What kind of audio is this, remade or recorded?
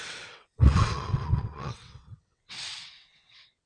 remade